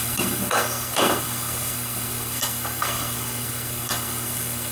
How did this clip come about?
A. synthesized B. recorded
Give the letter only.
A